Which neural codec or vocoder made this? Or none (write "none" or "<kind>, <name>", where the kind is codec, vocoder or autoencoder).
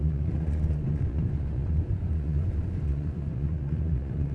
vocoder, Vocos